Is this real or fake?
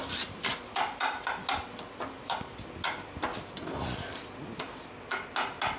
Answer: real